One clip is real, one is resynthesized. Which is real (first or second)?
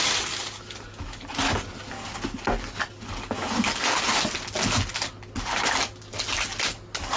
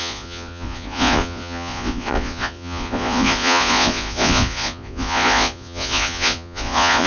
first